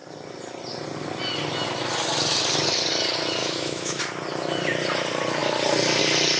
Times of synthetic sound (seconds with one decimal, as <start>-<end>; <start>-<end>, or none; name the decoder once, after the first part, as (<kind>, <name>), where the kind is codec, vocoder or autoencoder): 3.4-4.0 (autoencoder, DAC-VAE)